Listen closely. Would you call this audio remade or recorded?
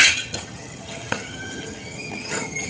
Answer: remade